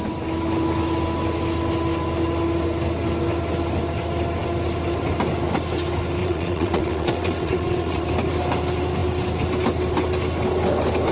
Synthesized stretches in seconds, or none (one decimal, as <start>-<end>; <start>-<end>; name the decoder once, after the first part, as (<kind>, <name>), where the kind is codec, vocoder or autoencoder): 6.2-8.1 (vocoder, WaveNeXt)